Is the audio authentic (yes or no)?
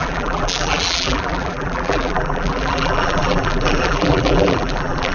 no